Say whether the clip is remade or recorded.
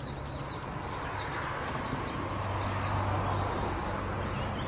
recorded